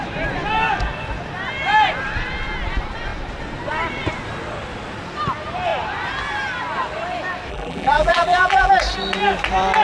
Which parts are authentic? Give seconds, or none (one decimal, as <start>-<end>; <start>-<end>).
0.0-7.5; 8.7-9.8